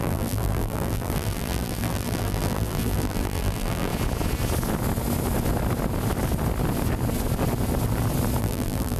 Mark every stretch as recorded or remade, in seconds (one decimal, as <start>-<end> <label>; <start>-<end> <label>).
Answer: 0.0-3.9 remade; 3.9-8.4 recorded; 8.4-9.0 remade